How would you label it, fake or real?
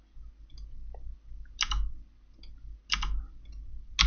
real